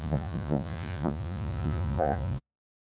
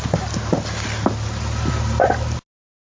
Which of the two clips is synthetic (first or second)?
first